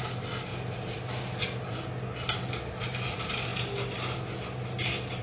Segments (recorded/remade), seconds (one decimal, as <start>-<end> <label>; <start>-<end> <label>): 0.0-5.2 recorded